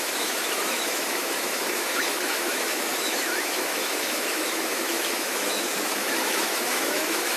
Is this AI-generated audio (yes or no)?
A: yes